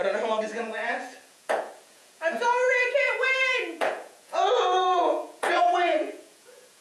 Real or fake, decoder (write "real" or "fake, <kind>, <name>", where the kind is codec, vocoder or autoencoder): fake, vocoder, Vocos